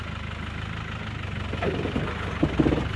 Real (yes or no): yes